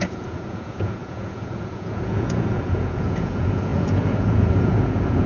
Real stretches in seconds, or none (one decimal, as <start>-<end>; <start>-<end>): none